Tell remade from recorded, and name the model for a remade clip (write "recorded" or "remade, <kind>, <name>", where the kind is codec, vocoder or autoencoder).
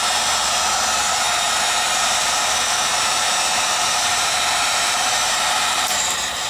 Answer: remade, vocoder, BigVGAN v2